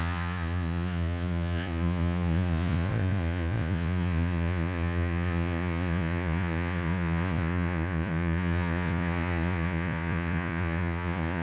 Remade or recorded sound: remade